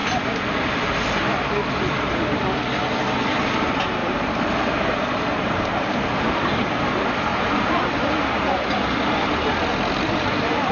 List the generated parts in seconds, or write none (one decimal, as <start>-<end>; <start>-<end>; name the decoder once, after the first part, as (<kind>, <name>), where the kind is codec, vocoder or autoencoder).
4.0-5.9 (vocoder, BigVGAN v2); 7.3-8.1

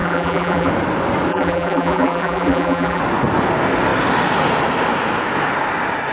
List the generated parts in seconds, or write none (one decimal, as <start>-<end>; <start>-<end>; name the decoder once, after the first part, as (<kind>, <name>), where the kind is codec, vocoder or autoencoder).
0.0-0.7 (vocoder, BigVGAN v2); 1.3-3.0

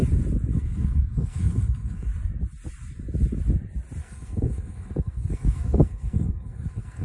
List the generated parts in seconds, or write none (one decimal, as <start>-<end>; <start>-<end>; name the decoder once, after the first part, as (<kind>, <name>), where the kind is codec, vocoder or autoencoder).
0.6-2.1 (codec, SNAC); 4.0-7.0

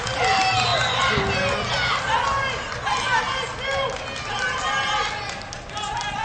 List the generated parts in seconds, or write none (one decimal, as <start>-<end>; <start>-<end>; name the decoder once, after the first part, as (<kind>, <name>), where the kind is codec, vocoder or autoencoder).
none

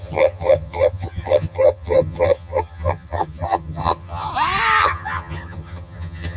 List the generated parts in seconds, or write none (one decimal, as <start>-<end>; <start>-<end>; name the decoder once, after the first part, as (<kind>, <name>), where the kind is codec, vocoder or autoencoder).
0.0-4.3 (vocoder, HiFi-GAN); 4.8-6.4

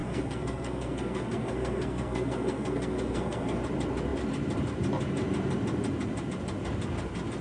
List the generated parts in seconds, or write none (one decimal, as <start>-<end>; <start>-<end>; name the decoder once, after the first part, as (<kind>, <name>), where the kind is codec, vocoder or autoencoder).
0.0-3.6 (codec, SNAC)

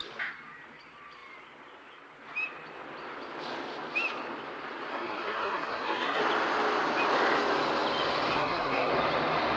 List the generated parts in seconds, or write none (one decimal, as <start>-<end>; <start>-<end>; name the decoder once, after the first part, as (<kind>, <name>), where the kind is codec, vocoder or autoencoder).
4.9-6.2 (codec, SNAC); 8.3-8.9

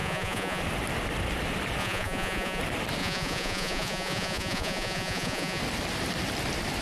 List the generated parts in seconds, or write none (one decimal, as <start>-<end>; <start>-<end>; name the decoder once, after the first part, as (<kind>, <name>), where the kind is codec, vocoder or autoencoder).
0.0-0.6 (vocoder, Vocos); 1.8-2.6; 3.0-5.6